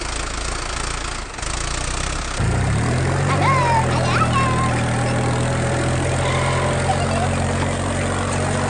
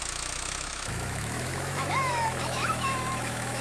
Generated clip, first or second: second